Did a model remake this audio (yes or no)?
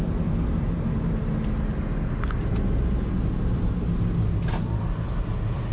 no